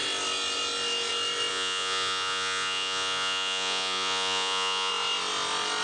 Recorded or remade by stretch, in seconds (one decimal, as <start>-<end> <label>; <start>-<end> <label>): 0.0-1.5 recorded; 1.5-4.9 remade; 4.9-5.8 recorded